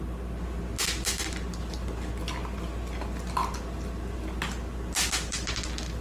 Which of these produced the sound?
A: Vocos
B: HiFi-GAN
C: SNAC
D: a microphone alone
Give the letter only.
D